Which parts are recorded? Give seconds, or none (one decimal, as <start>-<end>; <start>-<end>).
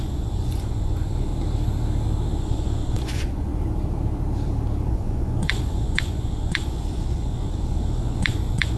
1.3-2.4; 3.5-4.9